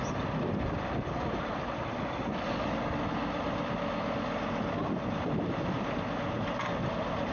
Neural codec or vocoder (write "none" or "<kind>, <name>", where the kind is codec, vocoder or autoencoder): none